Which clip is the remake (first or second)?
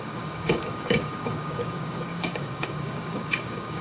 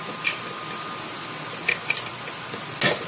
first